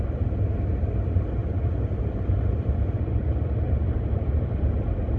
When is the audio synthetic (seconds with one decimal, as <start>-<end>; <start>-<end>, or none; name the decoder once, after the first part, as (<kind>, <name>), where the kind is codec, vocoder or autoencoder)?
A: 1.4-4.5 (vocoder, BigVGAN v2)